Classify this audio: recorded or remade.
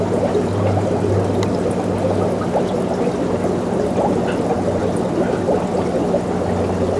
recorded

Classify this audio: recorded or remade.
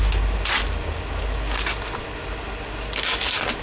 recorded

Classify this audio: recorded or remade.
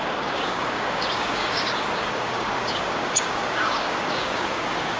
remade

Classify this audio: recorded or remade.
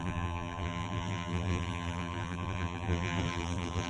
remade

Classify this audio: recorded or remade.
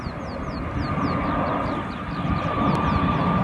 recorded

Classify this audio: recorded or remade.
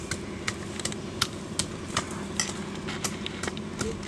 recorded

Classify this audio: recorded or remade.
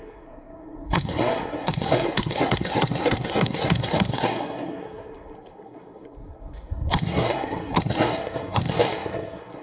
remade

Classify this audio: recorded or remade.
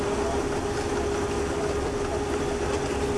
recorded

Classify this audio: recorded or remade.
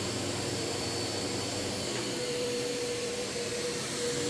remade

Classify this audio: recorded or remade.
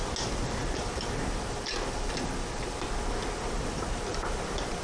recorded